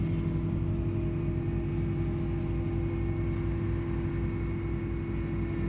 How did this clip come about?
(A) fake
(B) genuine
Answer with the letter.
B